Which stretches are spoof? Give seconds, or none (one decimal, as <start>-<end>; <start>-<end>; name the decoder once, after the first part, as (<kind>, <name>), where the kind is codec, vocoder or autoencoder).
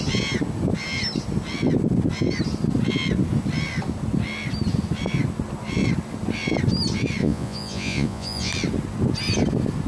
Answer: 7.2-8.5 (vocoder, Vocos)